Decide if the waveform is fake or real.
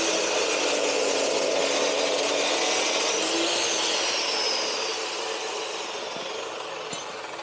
real